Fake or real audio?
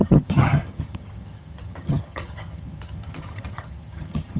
fake